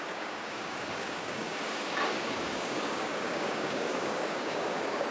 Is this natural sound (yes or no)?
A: no